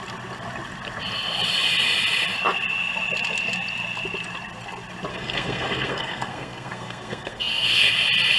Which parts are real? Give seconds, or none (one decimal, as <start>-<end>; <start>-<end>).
0.0-5.1; 7.9-8.4